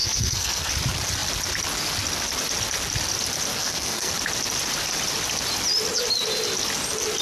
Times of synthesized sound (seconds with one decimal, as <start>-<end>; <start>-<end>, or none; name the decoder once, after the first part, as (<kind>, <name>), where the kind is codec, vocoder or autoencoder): 0.0-0.7 (codec, SNAC); 3.5-4.1